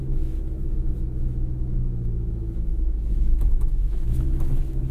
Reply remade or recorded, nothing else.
remade